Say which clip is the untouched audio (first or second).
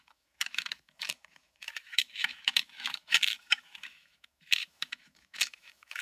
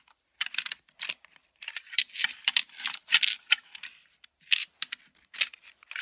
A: second